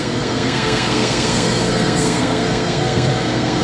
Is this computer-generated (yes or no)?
yes